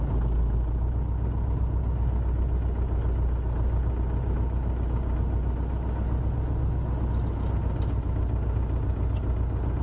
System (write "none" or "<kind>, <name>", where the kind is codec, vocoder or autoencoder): none